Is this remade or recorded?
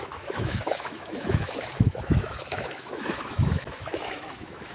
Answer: remade